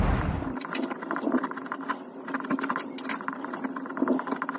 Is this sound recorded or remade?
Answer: recorded